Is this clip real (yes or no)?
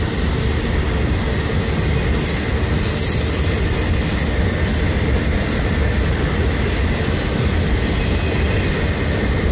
yes